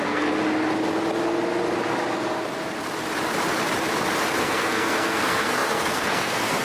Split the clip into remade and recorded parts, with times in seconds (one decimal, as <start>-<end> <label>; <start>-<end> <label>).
0.0-0.4 remade; 0.4-4.4 recorded; 4.4-6.6 remade